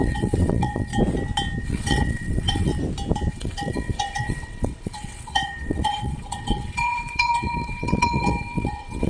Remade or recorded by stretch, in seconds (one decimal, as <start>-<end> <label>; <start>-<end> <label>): 0.0-0.9 remade; 0.9-1.6 recorded; 1.6-2.7 remade; 2.7-3.3 recorded; 3.3-9.1 remade